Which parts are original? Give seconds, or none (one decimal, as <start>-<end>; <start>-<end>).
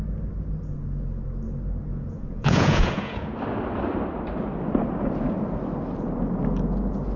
0.0-1.9; 3.3-7.2